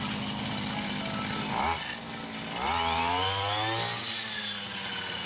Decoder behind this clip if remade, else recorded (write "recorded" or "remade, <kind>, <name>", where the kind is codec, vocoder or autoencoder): recorded